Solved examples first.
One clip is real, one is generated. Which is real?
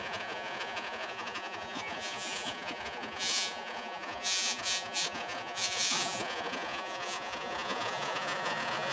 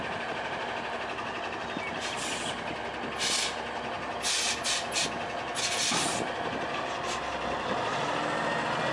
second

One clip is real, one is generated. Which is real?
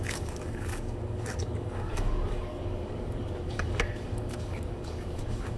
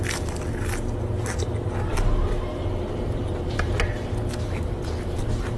second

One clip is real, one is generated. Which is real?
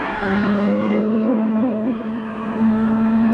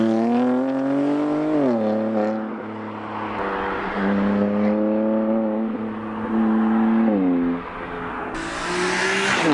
second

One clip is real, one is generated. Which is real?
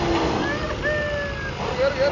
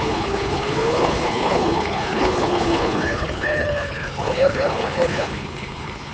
first